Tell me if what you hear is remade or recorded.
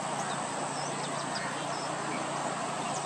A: recorded